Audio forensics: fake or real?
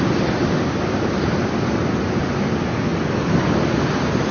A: real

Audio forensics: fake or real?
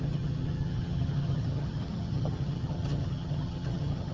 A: fake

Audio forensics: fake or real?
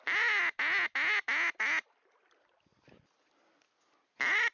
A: real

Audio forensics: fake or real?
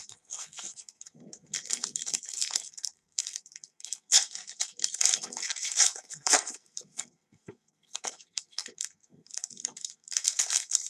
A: fake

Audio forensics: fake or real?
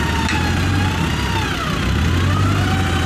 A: real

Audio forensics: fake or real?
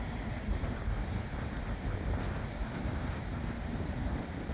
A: fake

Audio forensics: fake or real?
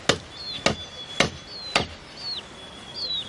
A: real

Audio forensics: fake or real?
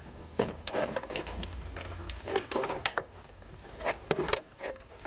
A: fake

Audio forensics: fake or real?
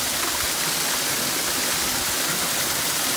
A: real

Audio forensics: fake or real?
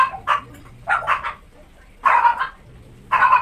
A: real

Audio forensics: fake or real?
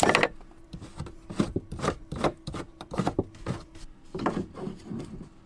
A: fake